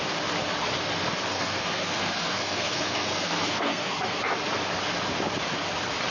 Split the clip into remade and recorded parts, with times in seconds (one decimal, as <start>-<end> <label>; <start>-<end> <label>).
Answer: 0.0-1.3 recorded; 1.3-4.2 remade; 4.2-6.1 recorded